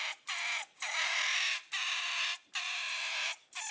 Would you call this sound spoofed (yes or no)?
no